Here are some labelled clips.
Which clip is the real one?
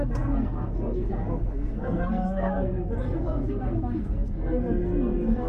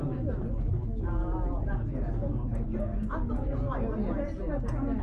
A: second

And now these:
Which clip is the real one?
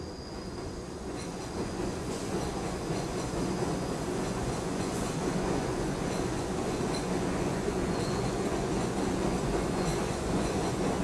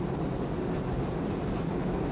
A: second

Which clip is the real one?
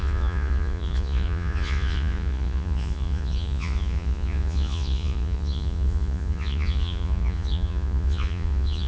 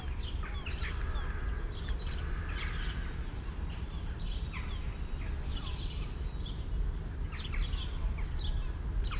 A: second